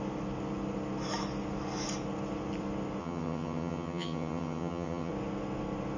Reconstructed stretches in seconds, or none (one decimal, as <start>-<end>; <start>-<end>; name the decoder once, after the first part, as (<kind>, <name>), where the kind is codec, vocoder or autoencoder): 3.0-5.1 (vocoder, HiFi-GAN)